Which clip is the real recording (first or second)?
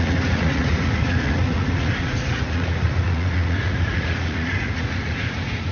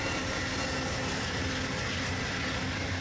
second